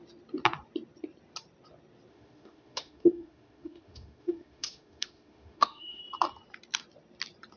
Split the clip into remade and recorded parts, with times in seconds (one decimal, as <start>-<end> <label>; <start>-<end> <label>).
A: 0.0-2.1 recorded; 2.1-6.0 remade; 6.0-7.6 recorded